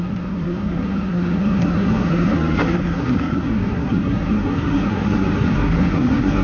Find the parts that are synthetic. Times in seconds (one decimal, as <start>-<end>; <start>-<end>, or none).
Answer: 0.0-6.4